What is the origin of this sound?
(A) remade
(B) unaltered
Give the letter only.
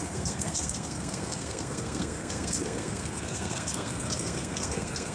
A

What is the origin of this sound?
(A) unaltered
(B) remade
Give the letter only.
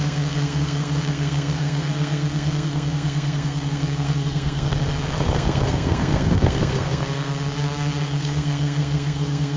B